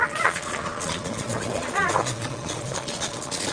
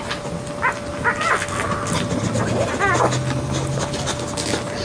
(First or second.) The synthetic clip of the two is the first